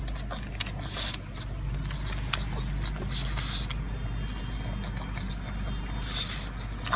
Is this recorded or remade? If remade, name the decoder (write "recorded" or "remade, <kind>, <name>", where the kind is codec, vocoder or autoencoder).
recorded